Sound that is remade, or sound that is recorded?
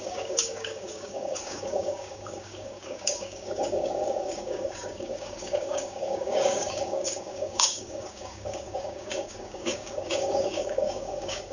remade